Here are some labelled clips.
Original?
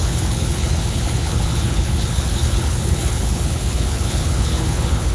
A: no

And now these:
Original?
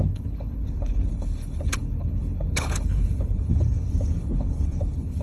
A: no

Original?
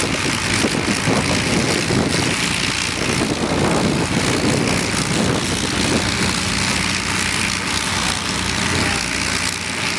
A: yes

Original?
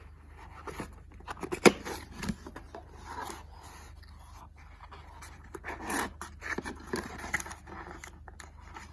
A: yes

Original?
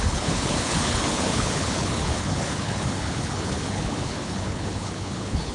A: no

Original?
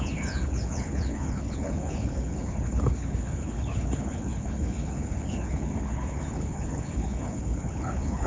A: no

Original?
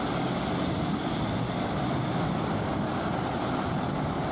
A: yes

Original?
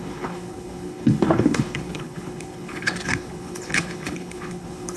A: no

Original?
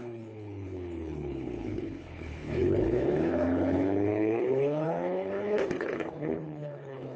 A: no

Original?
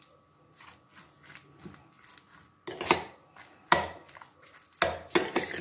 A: yes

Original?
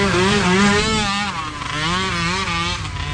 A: yes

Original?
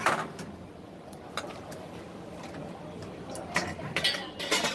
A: yes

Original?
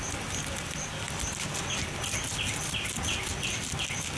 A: yes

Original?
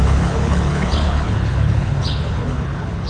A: no